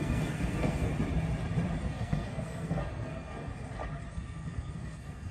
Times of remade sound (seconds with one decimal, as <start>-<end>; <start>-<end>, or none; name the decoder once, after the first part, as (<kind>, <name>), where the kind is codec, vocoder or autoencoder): 0.0-0.9 (codec, SNAC); 1.9-3.5; 4.1-5.3